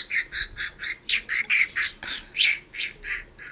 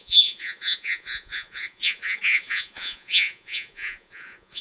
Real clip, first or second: first